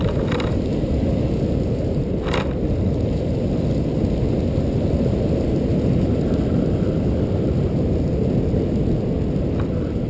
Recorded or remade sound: recorded